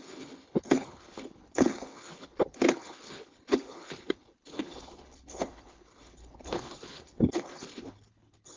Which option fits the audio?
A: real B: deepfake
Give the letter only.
B